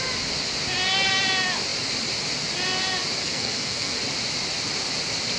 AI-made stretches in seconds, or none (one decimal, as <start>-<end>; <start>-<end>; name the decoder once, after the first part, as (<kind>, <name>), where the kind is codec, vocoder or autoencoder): 3.2-4.0 (codec, SNAC)